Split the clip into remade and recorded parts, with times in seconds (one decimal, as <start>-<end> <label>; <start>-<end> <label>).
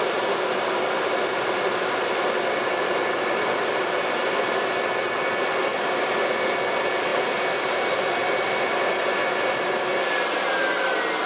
0.0-11.3 recorded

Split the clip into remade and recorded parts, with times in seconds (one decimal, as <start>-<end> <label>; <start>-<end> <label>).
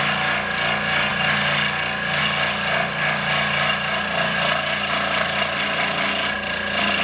0.0-7.0 recorded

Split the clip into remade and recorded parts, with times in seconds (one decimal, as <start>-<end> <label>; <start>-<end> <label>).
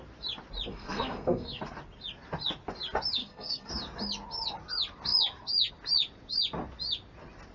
0.0-0.7 recorded; 0.7-1.6 remade; 1.6-3.2 recorded; 3.2-3.7 remade; 3.7-7.5 recorded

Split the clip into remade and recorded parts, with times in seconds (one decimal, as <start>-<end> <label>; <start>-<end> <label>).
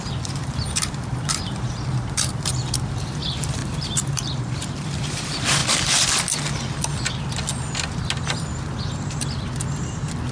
0.0-5.6 remade; 5.6-10.3 recorded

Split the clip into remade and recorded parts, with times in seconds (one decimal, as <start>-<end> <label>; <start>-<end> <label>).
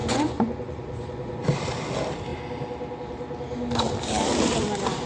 0.0-1.4 remade; 1.4-5.1 recorded